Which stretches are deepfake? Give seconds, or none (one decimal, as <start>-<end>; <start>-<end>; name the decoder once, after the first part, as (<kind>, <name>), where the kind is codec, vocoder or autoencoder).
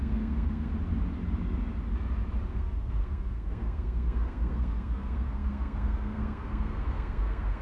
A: 0.0-0.7 (codec, SNAC); 2.5-7.6